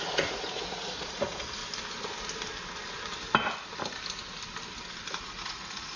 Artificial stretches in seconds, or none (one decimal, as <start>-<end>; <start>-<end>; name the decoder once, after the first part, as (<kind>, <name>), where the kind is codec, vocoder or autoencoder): 0.0-1.6 (vocoder, Vocos); 5.2-6.0